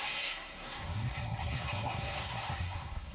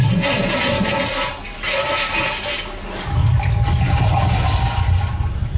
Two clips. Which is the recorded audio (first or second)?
second